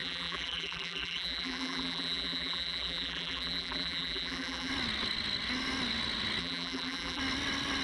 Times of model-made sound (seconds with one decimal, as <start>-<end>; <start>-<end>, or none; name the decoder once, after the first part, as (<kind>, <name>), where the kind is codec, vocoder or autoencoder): 0.0-4.7 (vocoder, BigVGAN v2); 6.4-7.2